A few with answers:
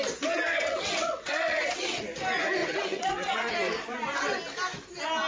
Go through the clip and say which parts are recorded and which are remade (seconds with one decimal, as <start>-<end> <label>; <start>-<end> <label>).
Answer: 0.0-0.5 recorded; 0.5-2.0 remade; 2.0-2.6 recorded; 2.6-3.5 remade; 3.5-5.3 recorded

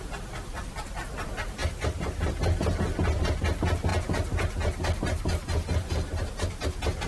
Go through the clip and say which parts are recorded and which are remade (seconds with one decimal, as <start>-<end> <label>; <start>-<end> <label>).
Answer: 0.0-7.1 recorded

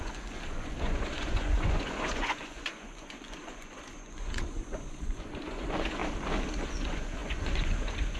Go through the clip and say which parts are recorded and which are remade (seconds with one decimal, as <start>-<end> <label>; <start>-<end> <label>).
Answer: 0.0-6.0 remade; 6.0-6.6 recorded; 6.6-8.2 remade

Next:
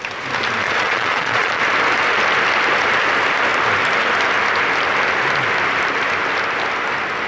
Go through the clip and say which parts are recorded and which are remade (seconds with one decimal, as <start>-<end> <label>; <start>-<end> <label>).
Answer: 0.0-0.6 recorded; 0.6-1.6 remade; 1.6-7.3 recorded

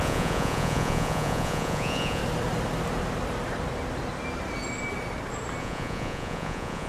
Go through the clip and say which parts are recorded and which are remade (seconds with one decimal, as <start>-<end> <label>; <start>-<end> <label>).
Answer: 0.0-2.2 remade; 2.2-5.6 recorded; 5.6-6.9 remade

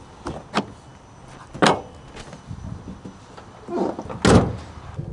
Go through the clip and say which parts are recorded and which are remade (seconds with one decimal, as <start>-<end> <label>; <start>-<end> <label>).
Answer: 0.0-5.1 recorded